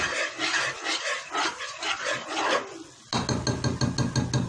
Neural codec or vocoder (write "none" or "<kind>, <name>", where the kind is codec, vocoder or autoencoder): none